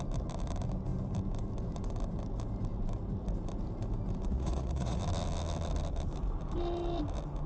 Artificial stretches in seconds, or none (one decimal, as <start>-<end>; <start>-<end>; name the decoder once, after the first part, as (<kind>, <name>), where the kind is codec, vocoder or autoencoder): 4.3-5.0 (vocoder, Vocos)